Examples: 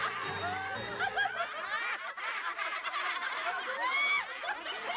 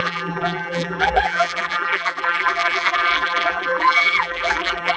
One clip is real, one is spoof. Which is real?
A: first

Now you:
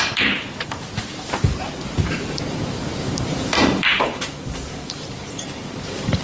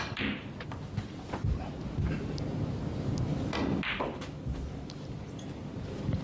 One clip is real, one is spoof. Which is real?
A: second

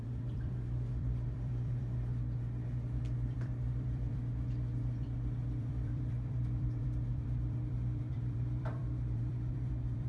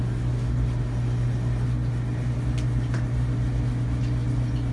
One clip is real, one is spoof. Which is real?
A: second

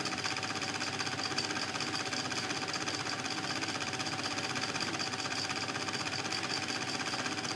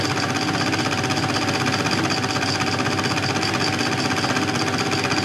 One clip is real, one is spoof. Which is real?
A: second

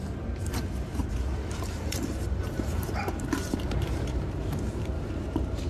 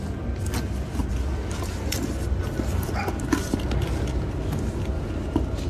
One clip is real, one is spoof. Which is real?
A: second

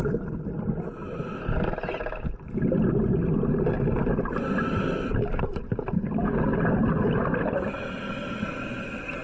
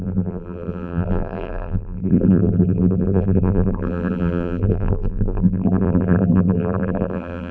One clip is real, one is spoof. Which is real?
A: first